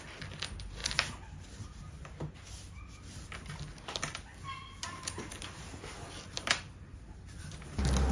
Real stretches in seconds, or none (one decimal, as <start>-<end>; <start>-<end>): 0.0-8.1